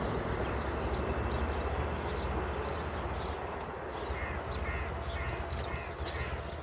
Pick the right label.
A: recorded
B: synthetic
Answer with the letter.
A